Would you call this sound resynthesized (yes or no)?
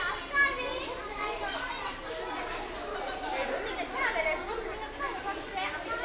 no